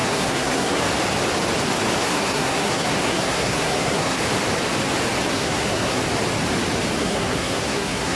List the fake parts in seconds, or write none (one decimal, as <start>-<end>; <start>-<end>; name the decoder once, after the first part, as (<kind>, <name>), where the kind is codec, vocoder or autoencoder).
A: 0.0-0.8 (codec, SNAC); 2.0-4.2; 5.3-6.0; 7.0-8.2